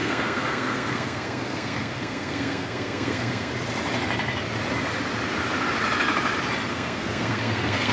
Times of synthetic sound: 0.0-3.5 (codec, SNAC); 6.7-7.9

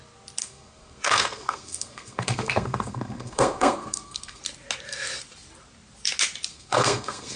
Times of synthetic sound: 0.4-4.4 (codec, SNAC); 6.5-7.4

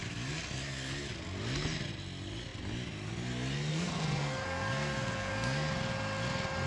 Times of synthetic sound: 3.7-5.7 (codec, SNAC)